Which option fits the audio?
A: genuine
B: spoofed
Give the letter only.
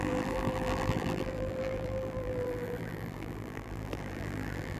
B